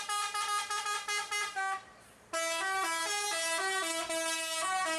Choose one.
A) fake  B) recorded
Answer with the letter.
B